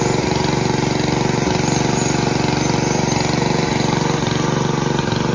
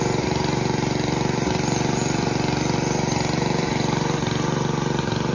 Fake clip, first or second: second